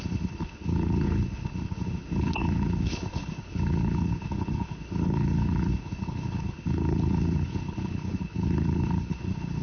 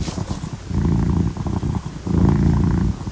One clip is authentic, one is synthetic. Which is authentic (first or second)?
second